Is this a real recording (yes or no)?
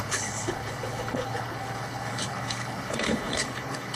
no